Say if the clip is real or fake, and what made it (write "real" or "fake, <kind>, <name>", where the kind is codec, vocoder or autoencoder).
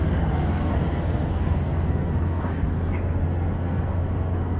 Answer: fake, codec, SNAC